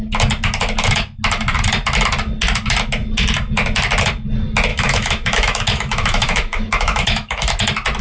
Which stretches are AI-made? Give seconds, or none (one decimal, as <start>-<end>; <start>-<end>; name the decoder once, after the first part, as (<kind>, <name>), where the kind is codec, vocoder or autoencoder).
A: 4.7-7.5 (autoencoder, DAC-VAE)